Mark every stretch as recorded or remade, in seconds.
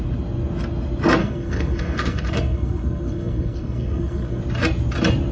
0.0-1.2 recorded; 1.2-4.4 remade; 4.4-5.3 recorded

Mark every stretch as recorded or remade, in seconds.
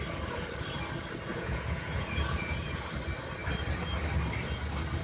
0.0-1.3 recorded; 1.3-2.9 remade; 2.9-5.0 recorded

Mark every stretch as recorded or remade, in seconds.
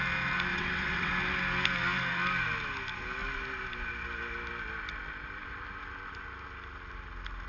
0.0-0.5 recorded; 0.5-1.1 remade; 1.1-7.5 recorded